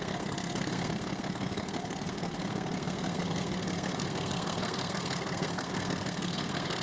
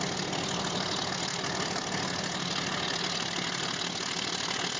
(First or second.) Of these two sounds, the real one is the second